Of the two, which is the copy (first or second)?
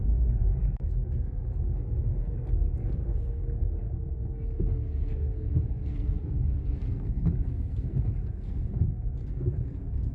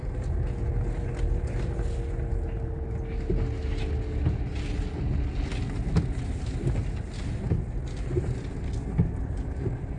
first